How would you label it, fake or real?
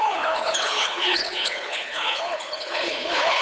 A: fake